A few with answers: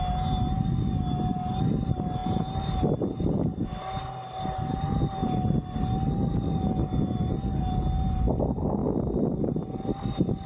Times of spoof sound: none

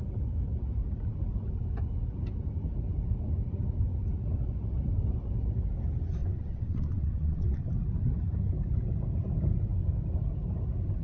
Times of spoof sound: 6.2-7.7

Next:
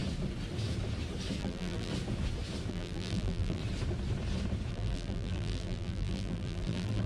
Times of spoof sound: 1.4-1.9; 2.7-3.6; 4.7-7.1

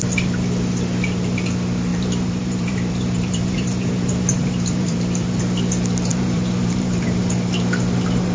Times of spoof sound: 1.9-5.4; 6.1-7.2

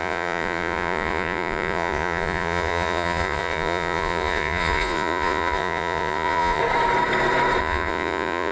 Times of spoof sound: 0.0-6.6; 7.6-8.5